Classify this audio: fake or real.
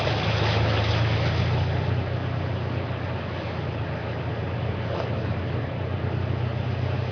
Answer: real